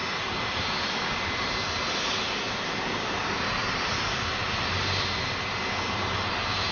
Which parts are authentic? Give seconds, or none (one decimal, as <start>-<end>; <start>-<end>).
0.0-6.7